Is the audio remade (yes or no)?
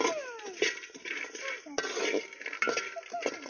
no